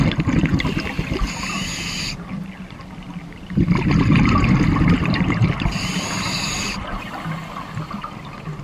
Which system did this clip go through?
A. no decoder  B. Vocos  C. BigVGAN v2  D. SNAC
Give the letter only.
A